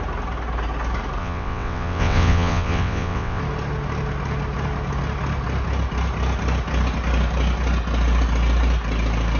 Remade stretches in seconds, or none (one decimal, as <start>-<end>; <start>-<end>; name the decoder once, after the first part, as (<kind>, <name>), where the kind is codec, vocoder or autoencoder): 1.2-3.4 (vocoder, WaveNeXt)